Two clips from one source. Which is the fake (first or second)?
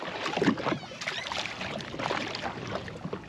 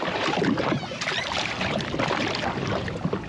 second